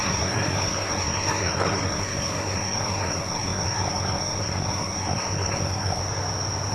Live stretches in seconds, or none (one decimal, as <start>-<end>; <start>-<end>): 6.0-6.7